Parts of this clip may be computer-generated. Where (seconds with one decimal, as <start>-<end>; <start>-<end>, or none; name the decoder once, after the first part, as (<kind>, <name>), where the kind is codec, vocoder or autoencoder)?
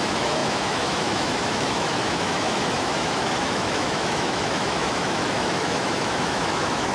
0.0-6.9 (autoencoder, DAC-VAE)